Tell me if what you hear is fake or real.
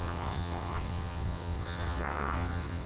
fake